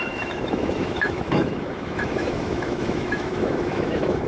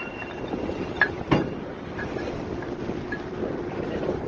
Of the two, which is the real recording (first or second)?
second